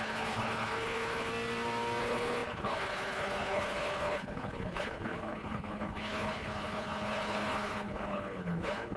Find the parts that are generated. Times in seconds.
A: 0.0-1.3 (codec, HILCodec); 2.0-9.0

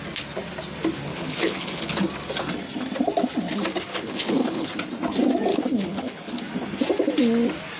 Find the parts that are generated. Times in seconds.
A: 1.1-2.0 (codec, HILCodec); 3.9-4.7; 5.5-6.4

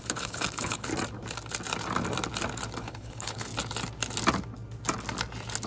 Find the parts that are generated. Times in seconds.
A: 0.0-0.9 (codec, HILCodec); 2.8-3.5